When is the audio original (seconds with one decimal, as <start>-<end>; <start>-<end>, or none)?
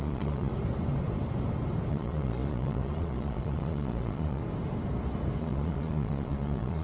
0.5-1.9; 4.4-5.4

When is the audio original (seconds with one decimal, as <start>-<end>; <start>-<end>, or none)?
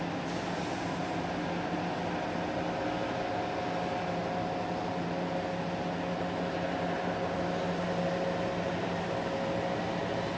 0.0-10.4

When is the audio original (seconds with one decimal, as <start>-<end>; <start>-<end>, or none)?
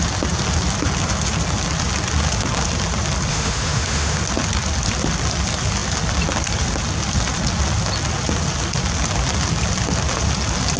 0.0-3.3; 4.2-10.8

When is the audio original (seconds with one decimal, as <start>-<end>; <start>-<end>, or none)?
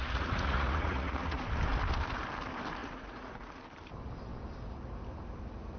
1.4-2.8; 3.5-5.8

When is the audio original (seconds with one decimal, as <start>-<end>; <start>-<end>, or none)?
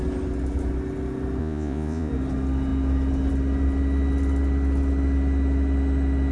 0.0-1.4; 2.1-6.3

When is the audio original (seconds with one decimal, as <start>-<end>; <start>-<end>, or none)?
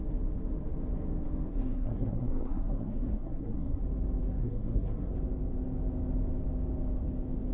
0.0-1.5; 3.8-4.4; 5.1-7.5